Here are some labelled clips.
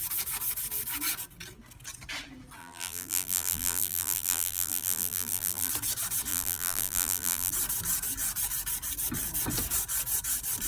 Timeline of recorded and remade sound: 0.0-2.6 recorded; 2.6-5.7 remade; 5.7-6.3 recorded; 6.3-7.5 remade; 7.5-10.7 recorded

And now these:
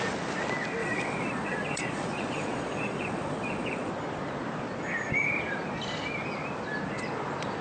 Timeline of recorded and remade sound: 0.0-0.8 recorded; 0.8-3.9 remade; 3.9-7.6 recorded

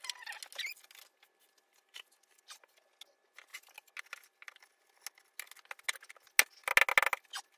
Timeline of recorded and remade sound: 0.0-7.6 recorded